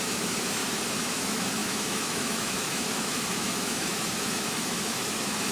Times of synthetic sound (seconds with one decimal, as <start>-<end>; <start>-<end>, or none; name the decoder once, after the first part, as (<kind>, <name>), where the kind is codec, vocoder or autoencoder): 0.0-0.6 (autoencoder, DAC-VAE); 1.1-5.5